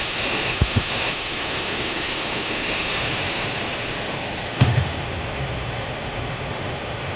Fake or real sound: fake